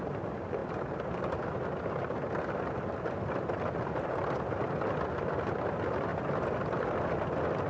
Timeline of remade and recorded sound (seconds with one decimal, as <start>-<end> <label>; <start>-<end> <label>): 0.0-7.7 recorded